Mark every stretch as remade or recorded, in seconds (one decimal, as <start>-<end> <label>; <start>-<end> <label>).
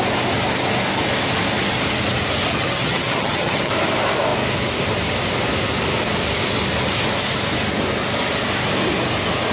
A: 0.0-2.5 recorded; 2.5-3.7 remade; 3.7-9.5 recorded